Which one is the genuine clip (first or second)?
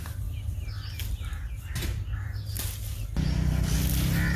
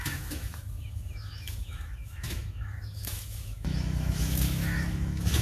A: first